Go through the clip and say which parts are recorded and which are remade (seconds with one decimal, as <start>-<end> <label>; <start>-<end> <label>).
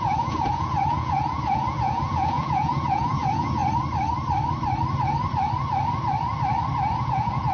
0.0-3.6 remade; 3.6-7.0 recorded; 7.0-7.5 remade